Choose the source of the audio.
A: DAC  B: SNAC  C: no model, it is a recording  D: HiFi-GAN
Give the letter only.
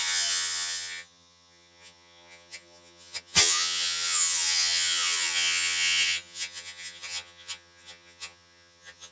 D